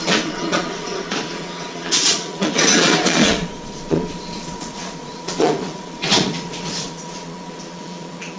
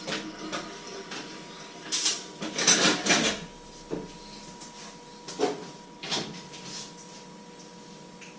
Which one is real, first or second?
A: second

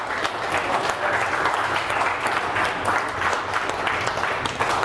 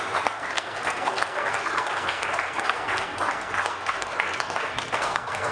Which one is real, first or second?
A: first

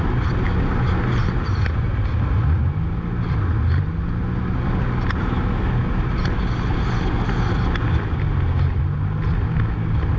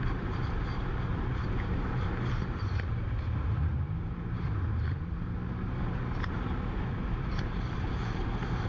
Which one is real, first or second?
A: first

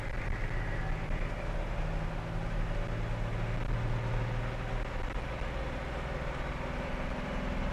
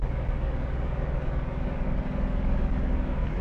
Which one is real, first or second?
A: first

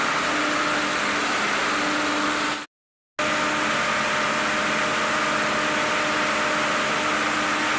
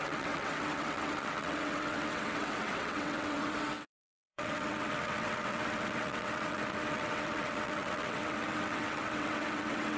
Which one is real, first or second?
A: first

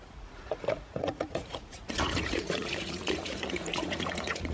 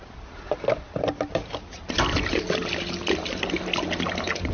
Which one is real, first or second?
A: second